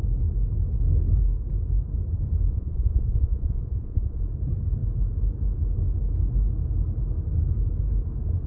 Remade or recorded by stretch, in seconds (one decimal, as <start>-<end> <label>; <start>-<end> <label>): 0.0-2.5 recorded; 2.5-4.2 remade; 4.2-8.5 recorded